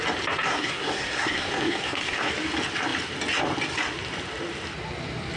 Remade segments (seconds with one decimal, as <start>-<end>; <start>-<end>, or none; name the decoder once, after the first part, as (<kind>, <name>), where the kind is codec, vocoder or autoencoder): 0.5-2.3 (codec, SNAC)